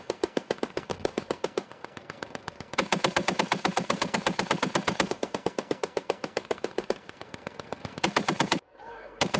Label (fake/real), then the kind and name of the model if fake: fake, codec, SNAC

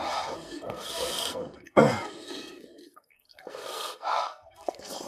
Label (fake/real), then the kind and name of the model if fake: fake, codec, SNAC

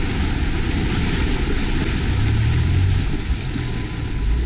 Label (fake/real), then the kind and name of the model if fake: real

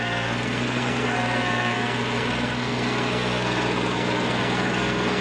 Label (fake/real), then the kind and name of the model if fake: fake, codec, SNAC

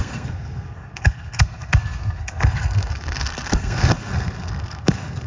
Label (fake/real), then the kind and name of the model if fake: fake, codec, SNAC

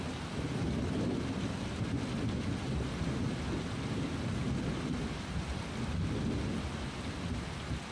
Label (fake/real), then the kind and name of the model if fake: real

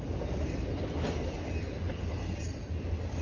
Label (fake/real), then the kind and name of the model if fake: real